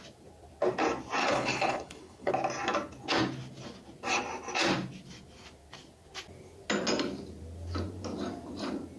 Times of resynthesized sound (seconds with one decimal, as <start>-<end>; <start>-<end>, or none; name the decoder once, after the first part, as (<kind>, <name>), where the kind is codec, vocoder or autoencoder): 1.2-2.3 (codec, HILCodec)